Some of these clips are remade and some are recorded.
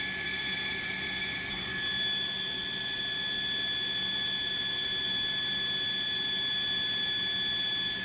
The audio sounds recorded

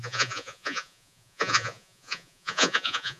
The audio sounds remade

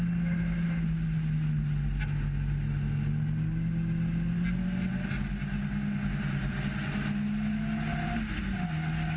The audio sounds recorded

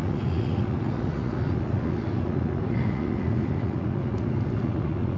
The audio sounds remade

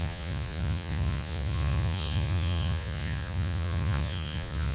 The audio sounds remade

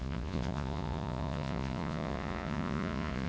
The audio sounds remade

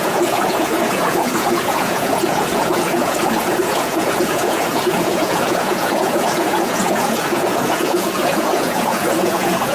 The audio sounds remade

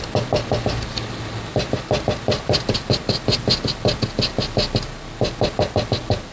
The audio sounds recorded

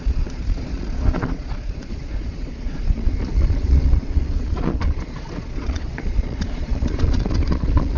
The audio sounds remade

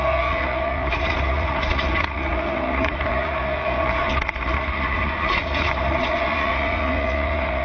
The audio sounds remade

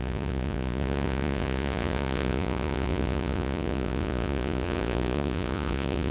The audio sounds remade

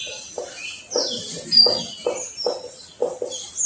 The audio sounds recorded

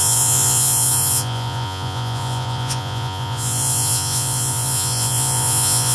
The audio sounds remade